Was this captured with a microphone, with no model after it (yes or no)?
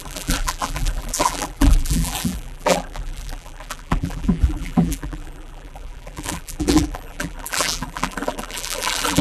no